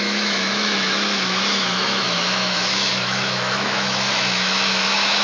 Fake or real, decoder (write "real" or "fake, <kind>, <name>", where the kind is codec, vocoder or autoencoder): fake, autoencoder, DAC-VAE